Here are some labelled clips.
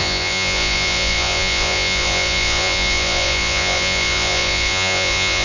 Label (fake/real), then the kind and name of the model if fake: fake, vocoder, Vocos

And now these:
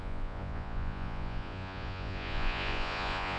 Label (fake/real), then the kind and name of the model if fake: fake, vocoder, Vocos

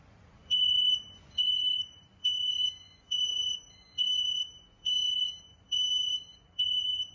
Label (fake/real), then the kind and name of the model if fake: fake, vocoder, Vocos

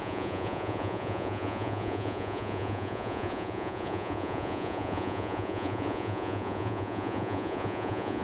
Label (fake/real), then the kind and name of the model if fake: fake, vocoder, Vocos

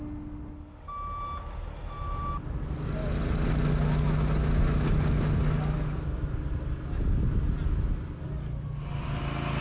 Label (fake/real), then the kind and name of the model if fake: real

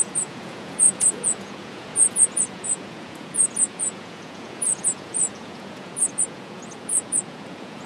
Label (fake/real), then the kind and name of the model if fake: fake, vocoder, Vocos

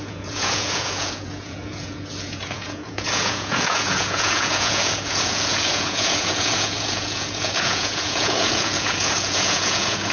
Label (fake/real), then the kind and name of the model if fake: fake, vocoder, Vocos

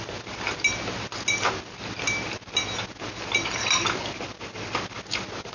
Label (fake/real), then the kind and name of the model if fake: real